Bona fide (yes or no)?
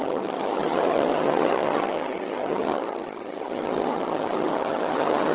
no